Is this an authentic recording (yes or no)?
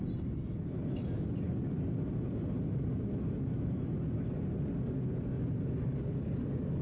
yes